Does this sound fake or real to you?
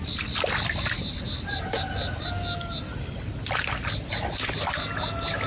real